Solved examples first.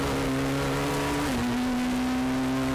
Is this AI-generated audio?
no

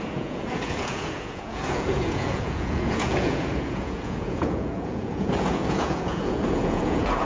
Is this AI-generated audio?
yes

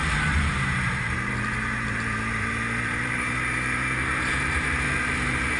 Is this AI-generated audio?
yes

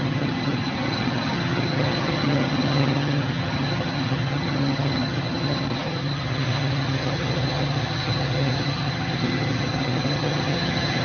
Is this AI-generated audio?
yes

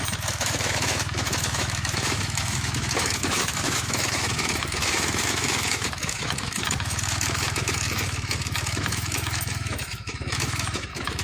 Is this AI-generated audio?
yes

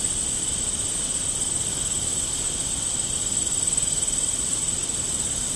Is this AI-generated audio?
no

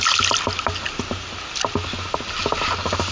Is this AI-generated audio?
no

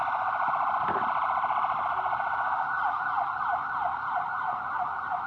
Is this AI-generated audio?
no